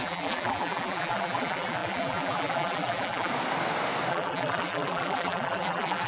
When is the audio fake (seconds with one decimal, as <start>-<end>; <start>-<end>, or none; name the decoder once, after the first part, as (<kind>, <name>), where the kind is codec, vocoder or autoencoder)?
0.0-3.3 (vocoder, BigVGAN v2); 4.1-6.1